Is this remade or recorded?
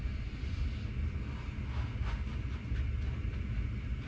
recorded